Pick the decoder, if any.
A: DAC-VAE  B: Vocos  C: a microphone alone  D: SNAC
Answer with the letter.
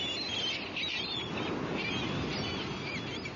C